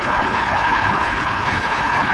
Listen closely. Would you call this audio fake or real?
fake